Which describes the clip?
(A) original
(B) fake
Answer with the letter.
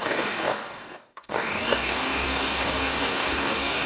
B